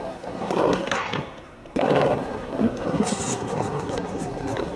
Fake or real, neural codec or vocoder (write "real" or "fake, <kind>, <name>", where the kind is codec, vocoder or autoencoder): fake, codec, SNAC